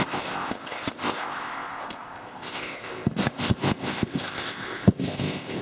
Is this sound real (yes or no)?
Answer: no